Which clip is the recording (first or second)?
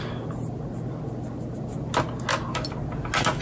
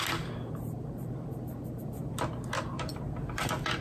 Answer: first